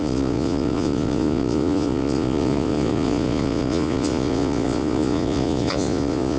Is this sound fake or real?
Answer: fake